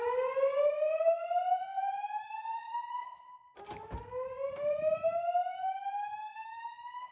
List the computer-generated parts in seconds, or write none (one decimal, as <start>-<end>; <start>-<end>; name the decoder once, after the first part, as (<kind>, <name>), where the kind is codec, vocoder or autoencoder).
none